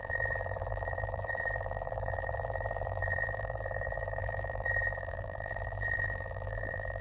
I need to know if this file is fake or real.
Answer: fake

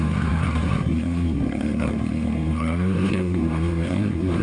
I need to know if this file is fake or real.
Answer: fake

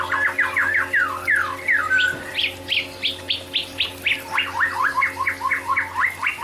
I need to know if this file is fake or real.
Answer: real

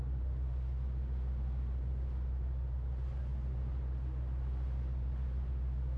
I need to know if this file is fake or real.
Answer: real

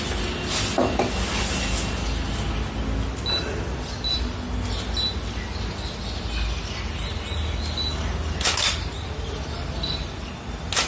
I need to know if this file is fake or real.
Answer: real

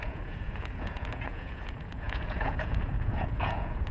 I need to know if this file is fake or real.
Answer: fake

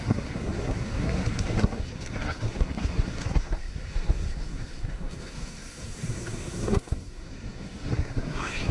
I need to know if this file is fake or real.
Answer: fake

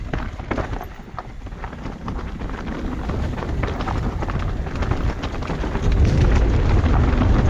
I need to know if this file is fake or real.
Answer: real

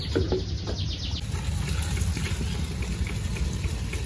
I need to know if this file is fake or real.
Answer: real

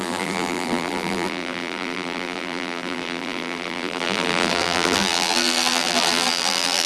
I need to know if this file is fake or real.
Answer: fake